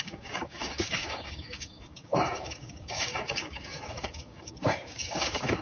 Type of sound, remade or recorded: remade